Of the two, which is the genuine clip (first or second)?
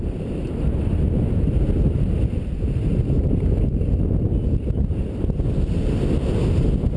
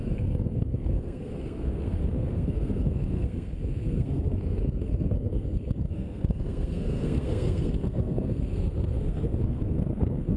first